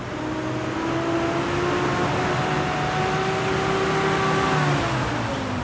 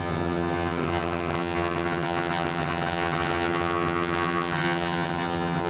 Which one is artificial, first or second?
second